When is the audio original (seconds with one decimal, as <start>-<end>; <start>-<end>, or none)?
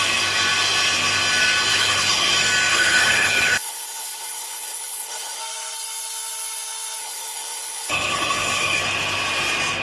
0.0-1.7; 2.3-2.7; 5.4-7.0; 8.8-9.8